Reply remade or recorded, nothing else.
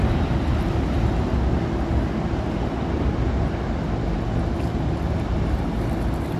recorded